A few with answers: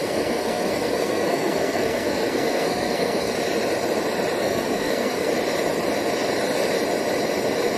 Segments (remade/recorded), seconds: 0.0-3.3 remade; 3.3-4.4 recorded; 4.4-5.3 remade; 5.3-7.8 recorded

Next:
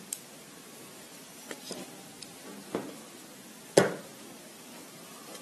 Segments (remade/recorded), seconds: 0.0-2.6 remade; 2.6-4.0 recorded; 4.0-5.4 remade

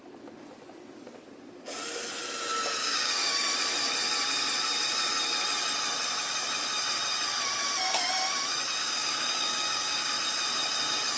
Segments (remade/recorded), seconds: 0.0-2.8 recorded; 2.8-3.5 remade; 3.5-8.8 recorded; 8.8-10.1 remade; 10.1-11.2 recorded

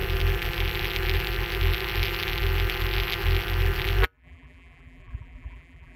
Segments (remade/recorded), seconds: 0.0-6.0 remade

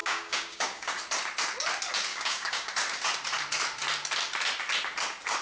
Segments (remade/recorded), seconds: 0.0-0.9 remade; 0.9-2.1 recorded; 2.1-2.7 remade; 2.7-5.4 recorded

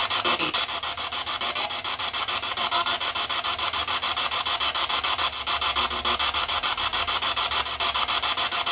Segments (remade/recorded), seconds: 0.0-8.7 recorded

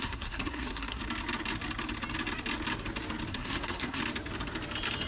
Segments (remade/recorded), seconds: 0.0-1.0 remade; 1.0-3.3 recorded; 3.3-4.0 remade; 4.0-5.1 recorded

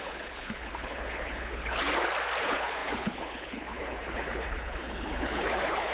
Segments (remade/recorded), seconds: 0.0-1.8 remade; 1.8-2.4 recorded; 2.4-5.9 remade